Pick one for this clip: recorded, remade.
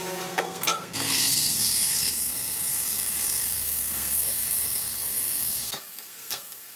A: remade